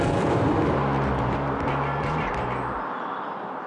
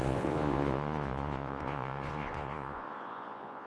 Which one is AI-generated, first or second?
second